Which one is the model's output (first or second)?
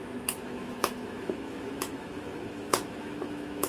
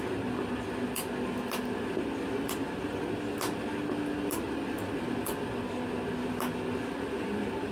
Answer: first